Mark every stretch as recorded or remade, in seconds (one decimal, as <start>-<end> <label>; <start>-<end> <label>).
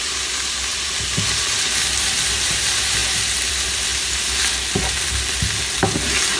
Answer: 0.0-6.4 recorded